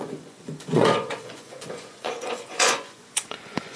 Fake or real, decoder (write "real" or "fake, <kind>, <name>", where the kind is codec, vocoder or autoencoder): fake, vocoder, Vocos